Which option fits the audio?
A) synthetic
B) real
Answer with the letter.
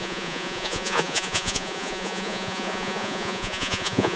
A